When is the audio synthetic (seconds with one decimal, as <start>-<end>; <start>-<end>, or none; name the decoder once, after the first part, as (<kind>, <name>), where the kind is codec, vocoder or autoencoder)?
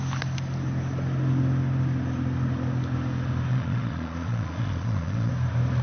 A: 3.5-5.3 (vocoder, Vocos)